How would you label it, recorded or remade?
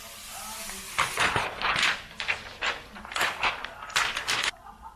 recorded